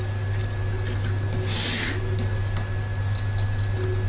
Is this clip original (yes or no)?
yes